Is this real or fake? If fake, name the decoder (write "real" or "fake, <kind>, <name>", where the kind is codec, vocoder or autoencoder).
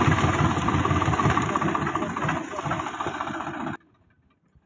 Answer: real